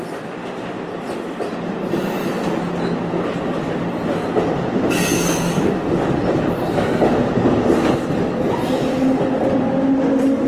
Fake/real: real